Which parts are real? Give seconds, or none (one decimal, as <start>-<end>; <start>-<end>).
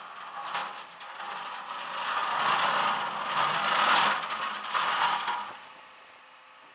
0.0-0.6; 1.5-2.2; 6.2-6.7